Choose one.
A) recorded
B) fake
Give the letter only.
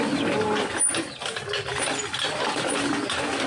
A